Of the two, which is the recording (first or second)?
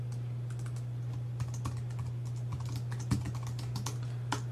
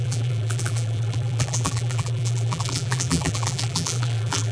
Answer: first